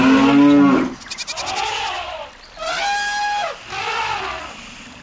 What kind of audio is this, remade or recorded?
recorded